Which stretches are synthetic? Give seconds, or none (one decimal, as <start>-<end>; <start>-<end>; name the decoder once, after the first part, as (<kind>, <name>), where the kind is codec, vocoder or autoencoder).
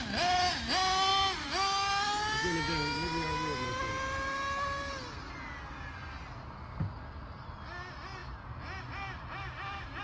none